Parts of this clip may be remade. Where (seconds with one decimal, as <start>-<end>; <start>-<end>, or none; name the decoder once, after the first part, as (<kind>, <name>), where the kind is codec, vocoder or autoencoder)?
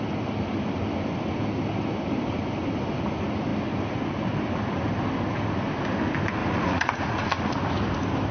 6.4-7.3 (vocoder, Vocos)